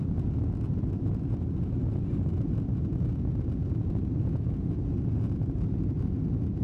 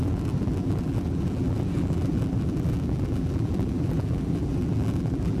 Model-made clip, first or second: second